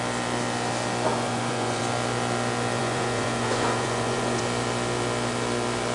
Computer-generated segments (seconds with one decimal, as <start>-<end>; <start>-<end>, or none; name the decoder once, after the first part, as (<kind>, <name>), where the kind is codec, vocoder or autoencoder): 1.1-1.8 (vocoder, Vocos); 2.8-4.4